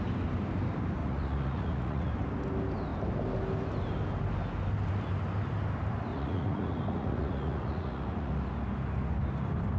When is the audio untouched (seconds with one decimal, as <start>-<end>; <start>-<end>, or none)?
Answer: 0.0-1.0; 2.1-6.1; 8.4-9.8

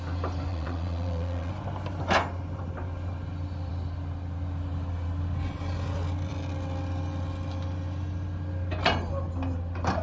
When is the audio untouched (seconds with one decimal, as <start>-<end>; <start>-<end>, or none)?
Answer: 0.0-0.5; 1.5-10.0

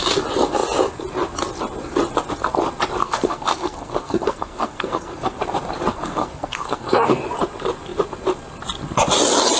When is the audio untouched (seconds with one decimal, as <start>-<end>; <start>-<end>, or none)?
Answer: 0.0-3.0; 5.4-5.9; 7.2-9.6

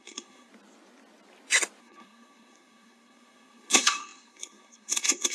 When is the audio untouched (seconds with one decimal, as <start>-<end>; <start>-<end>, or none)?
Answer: 0.5-1.8

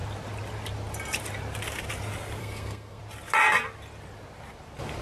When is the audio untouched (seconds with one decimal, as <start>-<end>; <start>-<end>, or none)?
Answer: 0.0-2.4; 3.0-5.0

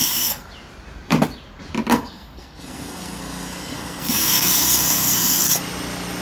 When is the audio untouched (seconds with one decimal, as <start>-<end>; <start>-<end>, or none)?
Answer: 0.5-1.9; 5.6-6.2